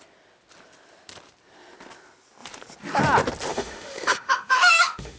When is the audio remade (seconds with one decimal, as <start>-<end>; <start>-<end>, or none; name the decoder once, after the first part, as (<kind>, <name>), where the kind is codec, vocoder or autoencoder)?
3.5-5.2 (autoencoder, DAC-VAE)

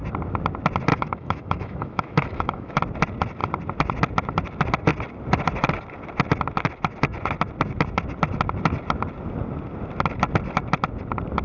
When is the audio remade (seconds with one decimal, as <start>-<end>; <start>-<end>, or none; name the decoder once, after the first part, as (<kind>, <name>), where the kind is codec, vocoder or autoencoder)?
0.9-2.8 (autoencoder, DAC-VAE)